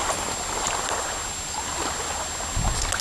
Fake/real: real